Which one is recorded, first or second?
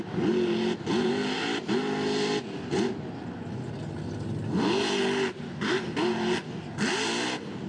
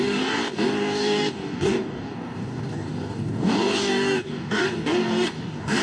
first